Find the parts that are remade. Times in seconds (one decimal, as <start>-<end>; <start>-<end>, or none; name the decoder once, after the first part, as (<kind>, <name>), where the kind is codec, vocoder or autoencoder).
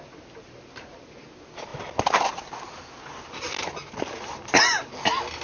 none